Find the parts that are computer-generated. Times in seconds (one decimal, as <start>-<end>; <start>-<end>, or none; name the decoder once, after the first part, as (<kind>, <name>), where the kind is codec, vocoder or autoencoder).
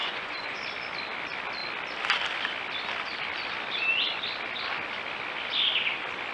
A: 0.0-0.6 (vocoder, Vocos)